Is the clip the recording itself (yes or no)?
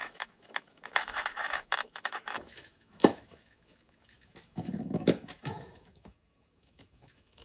no